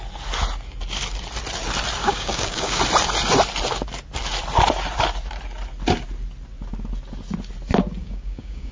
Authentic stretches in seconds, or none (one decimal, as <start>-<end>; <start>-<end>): 0.0-2.0; 2.8-8.0